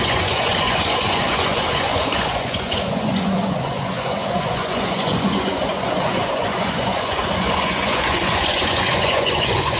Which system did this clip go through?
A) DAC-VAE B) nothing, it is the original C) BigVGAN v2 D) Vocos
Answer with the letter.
D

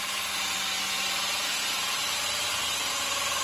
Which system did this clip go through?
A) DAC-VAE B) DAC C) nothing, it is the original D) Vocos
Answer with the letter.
C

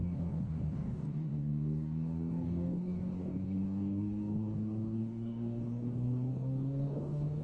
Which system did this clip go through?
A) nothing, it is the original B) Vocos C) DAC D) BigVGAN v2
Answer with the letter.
C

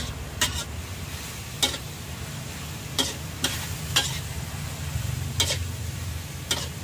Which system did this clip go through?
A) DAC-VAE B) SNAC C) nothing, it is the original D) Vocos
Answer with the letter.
C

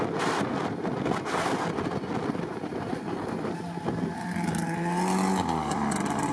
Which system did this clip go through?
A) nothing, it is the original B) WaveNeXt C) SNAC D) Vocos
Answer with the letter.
A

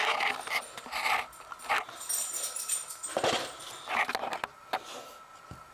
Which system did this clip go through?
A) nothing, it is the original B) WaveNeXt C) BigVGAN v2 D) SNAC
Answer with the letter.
A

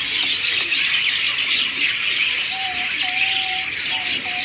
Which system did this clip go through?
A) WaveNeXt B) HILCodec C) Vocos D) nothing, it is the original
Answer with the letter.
D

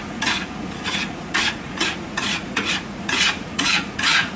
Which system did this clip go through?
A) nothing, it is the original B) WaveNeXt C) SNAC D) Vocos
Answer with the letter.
D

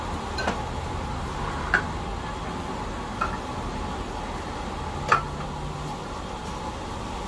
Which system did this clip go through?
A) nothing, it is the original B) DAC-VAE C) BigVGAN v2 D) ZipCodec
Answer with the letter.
A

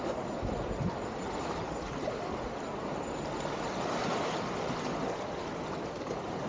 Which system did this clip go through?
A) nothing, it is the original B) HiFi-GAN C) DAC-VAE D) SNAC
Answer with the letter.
A